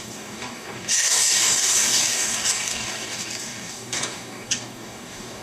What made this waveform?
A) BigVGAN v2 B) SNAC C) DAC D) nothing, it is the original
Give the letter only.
C